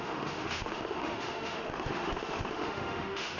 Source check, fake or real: fake